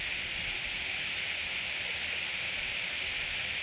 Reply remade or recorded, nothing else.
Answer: recorded